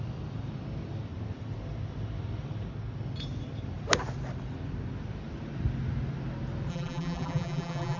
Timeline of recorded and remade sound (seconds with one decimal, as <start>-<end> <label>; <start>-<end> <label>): 0.0-6.7 recorded; 6.7-8.0 remade